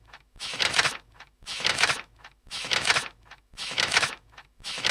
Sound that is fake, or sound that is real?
fake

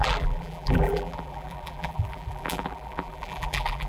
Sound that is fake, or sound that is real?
fake